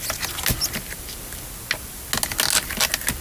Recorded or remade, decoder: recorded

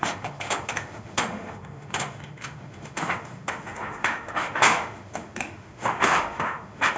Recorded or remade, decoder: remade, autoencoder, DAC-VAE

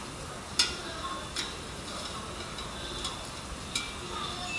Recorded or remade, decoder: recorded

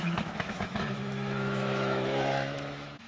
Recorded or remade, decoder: remade, autoencoder, DAC-VAE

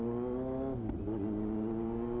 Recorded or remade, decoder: recorded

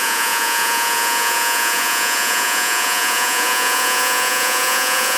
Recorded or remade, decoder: remade, vocoder, Vocos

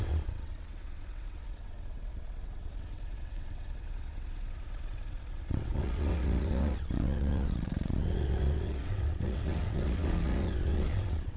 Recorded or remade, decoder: remade, vocoder, WaveNeXt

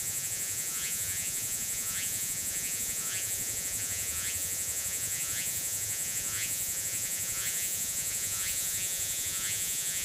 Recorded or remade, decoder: remade, vocoder, Vocos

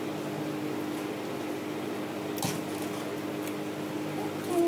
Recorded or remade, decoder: recorded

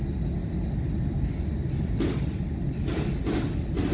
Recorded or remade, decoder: recorded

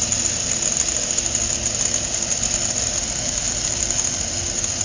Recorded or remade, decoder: recorded